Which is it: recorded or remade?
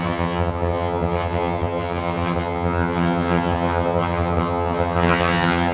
remade